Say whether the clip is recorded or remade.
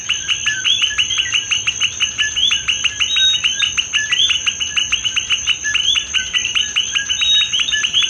recorded